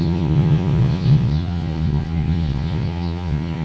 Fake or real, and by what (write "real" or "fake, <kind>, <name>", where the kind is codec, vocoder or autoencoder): fake, vocoder, Vocos